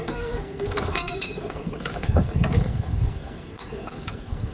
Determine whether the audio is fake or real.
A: fake